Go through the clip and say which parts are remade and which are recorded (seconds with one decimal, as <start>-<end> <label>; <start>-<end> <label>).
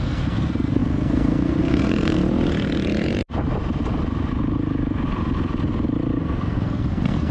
0.0-2.2 remade; 2.2-6.2 recorded; 6.2-7.3 remade